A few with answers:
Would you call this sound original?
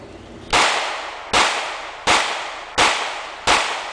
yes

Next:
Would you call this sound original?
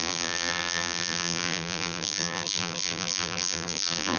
no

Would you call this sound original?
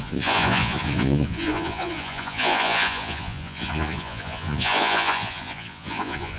no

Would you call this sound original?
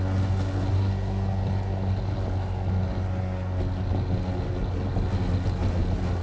yes